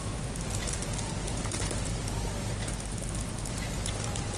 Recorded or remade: recorded